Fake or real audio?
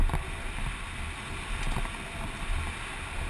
real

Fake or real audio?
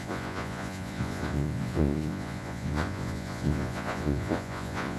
fake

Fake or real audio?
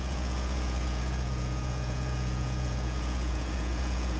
fake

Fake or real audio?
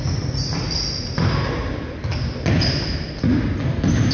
real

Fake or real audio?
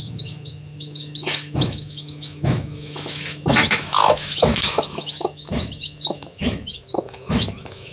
fake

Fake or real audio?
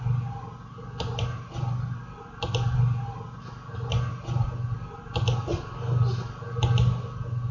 real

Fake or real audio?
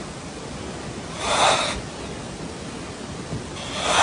real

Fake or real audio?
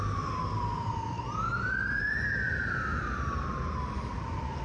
real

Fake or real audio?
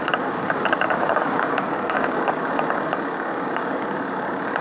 fake